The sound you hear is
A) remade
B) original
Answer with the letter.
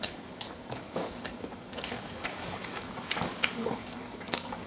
A